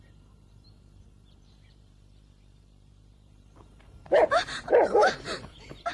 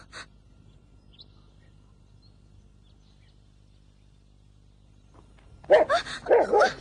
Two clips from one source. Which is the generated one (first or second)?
first